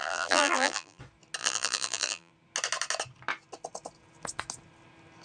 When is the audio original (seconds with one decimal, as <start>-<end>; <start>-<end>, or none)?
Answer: 1.0-1.4; 2.3-5.2